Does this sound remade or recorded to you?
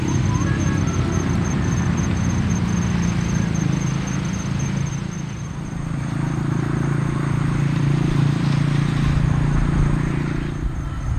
recorded